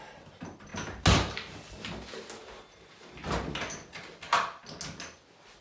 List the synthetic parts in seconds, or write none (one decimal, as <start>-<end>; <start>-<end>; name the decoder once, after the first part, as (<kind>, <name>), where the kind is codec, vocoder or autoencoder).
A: none